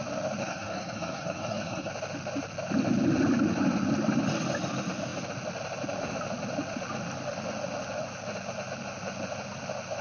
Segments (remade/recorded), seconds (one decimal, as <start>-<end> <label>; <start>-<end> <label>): 0.0-0.4 recorded; 0.4-1.9 remade; 1.9-10.0 recorded